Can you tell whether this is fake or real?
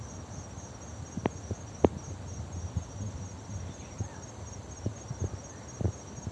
fake